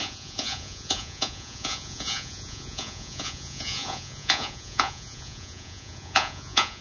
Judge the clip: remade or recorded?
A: remade